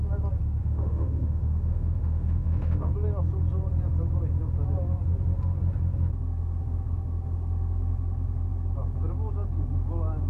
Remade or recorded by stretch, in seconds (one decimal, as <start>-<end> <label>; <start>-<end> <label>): 0.0-0.6 recorded; 0.6-2.9 remade; 2.9-10.3 recorded